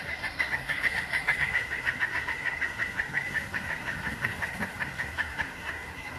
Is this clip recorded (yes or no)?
no